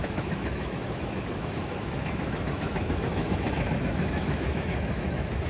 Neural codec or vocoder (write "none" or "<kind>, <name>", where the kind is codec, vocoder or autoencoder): autoencoder, DAC-VAE